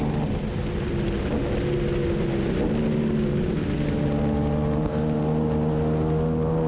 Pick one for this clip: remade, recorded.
recorded